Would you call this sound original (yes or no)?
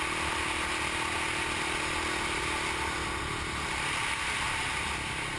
yes